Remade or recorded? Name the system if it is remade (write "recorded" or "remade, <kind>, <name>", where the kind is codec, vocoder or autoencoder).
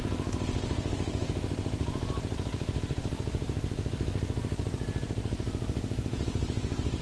recorded